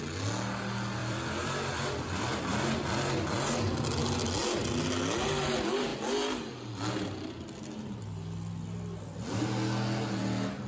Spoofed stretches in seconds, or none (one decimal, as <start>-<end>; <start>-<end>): 1.0-2.4